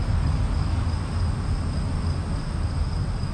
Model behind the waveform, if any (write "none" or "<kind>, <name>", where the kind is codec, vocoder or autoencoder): none